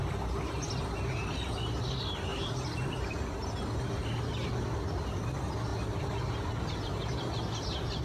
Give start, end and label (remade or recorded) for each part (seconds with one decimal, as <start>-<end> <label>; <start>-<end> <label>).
0.0-8.0 recorded